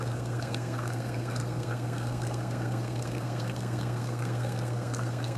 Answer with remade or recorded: remade